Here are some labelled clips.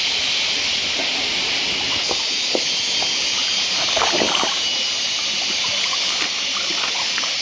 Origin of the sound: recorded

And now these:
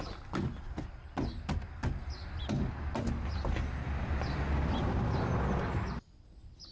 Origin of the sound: recorded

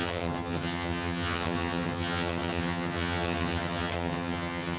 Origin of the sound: remade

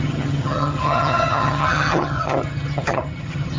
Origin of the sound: remade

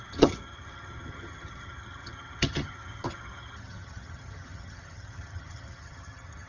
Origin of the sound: remade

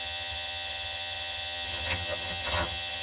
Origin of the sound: remade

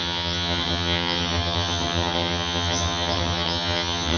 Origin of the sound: remade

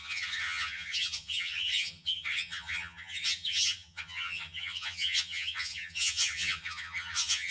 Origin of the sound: remade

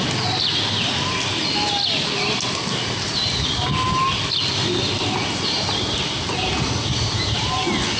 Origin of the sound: recorded